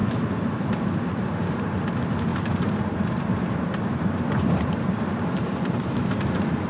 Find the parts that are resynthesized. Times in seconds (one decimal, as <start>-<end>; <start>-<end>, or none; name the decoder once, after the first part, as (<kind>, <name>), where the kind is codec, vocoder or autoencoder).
2.3-6.3 (vocoder, BigVGAN v2)